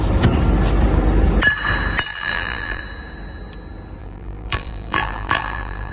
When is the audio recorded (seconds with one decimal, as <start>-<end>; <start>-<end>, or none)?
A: 0.0-2.1; 2.8-4.0